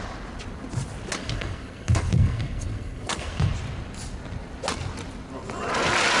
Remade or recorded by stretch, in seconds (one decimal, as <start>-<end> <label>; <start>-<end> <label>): 0.0-1.2 recorded; 1.2-3.5 remade; 3.5-6.2 recorded